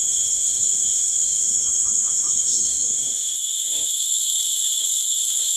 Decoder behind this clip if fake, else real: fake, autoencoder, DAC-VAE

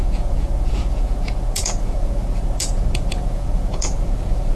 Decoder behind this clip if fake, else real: fake, vocoder, Vocos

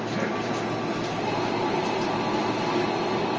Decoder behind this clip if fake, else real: real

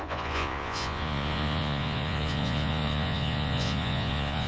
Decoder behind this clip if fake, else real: fake, vocoder, Vocos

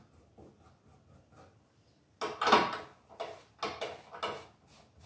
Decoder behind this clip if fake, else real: real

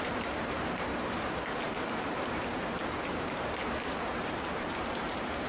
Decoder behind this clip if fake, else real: fake, vocoder, BigVGAN v2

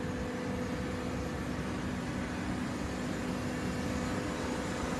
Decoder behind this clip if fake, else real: real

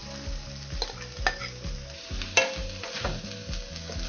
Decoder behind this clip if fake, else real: real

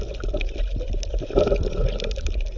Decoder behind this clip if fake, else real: real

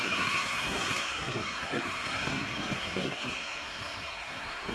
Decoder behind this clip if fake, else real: fake, codec, SNAC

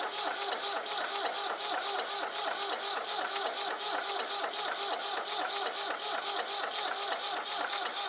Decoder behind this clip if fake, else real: real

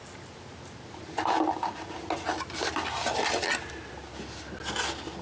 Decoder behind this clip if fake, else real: real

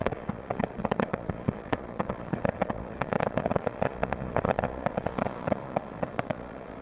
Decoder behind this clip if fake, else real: fake, vocoder, Vocos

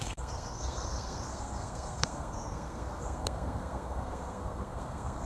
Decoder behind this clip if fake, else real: fake, codec, SNAC